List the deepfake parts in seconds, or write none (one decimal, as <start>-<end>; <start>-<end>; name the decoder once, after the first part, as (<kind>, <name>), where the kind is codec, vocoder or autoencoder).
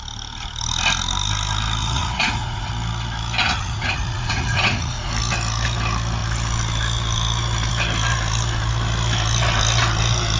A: 1.8-2.7 (vocoder, Vocos); 3.4-5.1